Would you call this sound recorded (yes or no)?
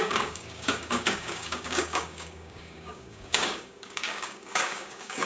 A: no